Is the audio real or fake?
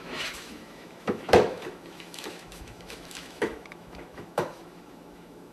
fake